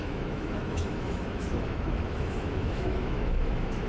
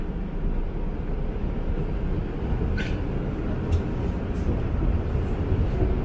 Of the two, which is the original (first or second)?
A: second